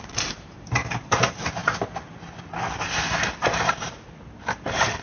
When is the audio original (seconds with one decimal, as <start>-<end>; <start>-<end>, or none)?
1.6-3.8